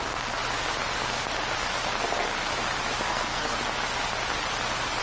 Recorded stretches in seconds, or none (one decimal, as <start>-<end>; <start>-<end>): 0.0-3.1; 3.6-5.0